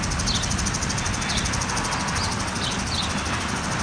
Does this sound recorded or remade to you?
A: recorded